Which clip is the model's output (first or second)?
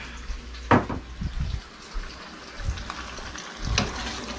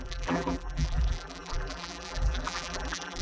second